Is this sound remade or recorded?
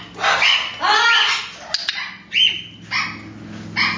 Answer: recorded